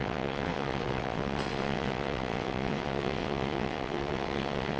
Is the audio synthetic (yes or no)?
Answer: yes